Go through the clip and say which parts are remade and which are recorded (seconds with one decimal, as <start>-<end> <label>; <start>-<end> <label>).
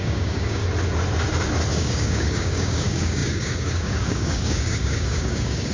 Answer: 0.0-0.6 remade; 0.6-1.7 recorded; 1.7-5.7 remade